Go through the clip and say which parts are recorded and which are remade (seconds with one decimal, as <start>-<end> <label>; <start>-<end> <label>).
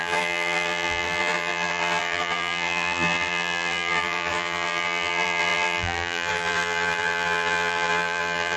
0.0-8.6 remade